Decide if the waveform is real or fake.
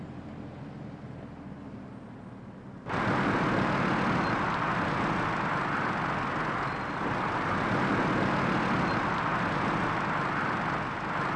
real